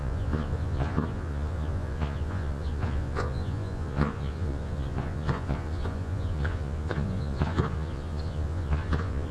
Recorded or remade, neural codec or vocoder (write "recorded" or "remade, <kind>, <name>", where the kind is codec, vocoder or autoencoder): remade, vocoder, Vocos